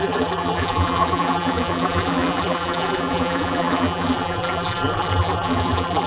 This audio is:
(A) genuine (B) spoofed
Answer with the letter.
B